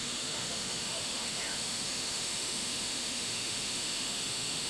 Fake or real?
fake